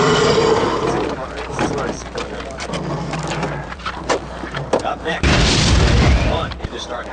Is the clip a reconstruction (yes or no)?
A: yes